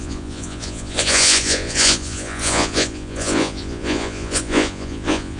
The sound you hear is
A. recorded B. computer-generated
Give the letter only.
B